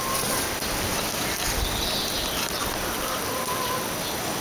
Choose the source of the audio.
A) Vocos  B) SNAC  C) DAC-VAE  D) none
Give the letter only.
D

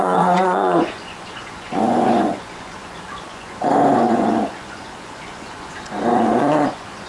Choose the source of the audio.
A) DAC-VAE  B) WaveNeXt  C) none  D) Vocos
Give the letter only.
D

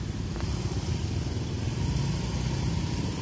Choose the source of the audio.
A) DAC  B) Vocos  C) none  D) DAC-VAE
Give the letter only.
C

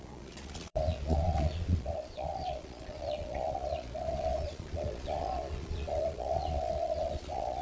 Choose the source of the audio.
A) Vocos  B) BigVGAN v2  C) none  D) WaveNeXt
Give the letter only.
A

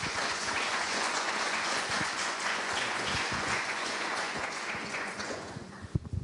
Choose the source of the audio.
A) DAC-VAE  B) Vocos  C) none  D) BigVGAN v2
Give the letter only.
B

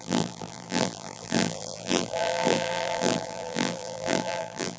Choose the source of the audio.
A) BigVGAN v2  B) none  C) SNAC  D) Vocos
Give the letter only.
A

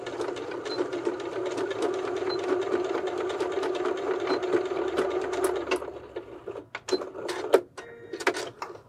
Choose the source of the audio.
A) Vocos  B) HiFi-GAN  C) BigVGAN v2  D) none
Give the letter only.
D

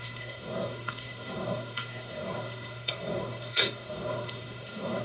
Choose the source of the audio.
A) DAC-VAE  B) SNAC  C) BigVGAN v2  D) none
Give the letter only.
B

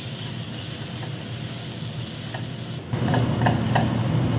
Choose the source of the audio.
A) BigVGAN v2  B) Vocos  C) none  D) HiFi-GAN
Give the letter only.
C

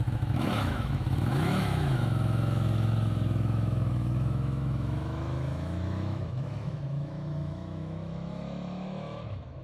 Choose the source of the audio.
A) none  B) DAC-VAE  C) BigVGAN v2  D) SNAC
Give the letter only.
B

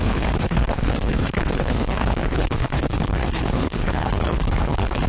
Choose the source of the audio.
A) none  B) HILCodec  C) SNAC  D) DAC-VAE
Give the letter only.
B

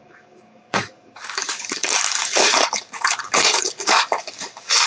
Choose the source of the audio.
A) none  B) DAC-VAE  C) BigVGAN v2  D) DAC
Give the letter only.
D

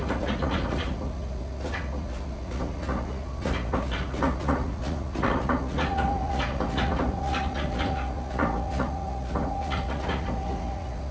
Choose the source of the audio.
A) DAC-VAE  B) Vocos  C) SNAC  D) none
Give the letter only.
B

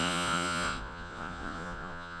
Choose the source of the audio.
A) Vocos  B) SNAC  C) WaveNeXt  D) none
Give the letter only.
A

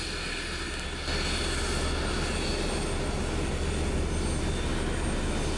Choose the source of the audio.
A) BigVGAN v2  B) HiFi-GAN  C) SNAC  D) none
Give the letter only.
D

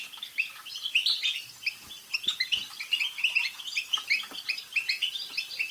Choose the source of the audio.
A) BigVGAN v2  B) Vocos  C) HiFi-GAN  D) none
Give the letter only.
A